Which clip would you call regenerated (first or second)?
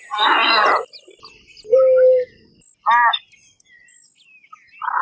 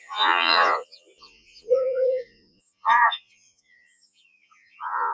second